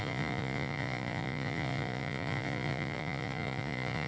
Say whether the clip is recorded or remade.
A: remade